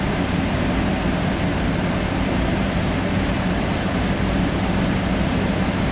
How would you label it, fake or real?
real